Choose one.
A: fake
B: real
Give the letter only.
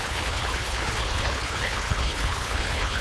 A